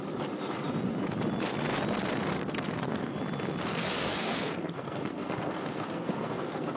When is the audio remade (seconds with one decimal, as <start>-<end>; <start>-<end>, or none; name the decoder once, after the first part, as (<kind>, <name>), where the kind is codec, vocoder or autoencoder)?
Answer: 2.3-3.1 (codec, SNAC); 3.7-6.8